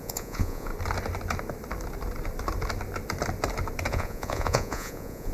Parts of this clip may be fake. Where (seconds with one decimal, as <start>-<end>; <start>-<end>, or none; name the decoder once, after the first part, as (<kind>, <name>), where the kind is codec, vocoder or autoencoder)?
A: 0.0-0.7 (vocoder, Vocos); 3.9-5.3